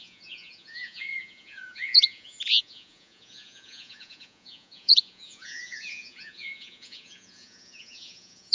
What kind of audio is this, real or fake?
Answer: fake